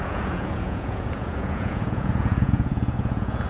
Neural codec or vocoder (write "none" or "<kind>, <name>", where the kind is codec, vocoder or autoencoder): vocoder, Vocos